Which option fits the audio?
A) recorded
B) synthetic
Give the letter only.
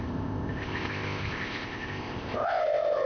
B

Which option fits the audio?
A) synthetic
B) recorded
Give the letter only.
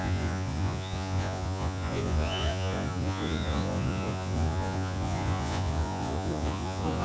A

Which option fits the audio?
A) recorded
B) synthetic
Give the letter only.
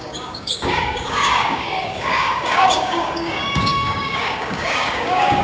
B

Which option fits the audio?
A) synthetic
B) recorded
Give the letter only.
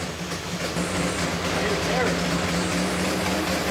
B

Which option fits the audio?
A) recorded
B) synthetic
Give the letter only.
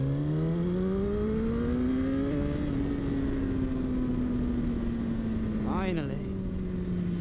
A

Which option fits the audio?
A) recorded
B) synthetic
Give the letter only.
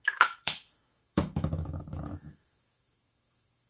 B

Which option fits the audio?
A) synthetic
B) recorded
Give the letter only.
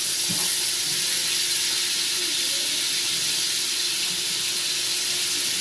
B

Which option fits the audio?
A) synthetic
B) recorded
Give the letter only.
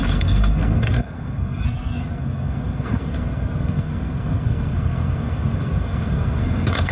A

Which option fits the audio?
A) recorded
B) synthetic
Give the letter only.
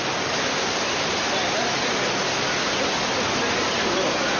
A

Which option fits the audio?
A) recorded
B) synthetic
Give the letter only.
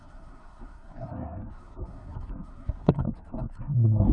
B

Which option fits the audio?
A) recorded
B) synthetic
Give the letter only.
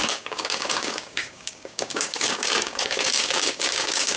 B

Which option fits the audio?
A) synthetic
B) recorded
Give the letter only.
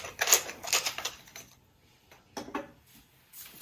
B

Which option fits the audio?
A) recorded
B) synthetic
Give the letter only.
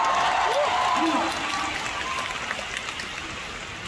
A